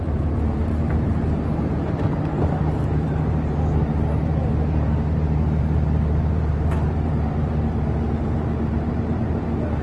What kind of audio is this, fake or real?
fake